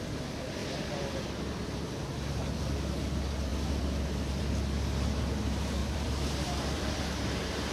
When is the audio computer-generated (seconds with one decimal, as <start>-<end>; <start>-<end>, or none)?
0.6-1.2; 5.8-7.0